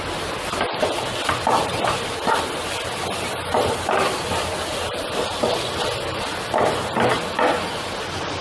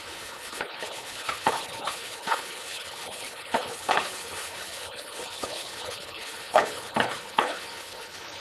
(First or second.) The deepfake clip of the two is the second